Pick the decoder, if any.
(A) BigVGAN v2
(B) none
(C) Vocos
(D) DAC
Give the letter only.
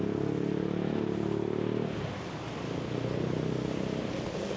B